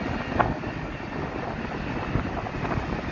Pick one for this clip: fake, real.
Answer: real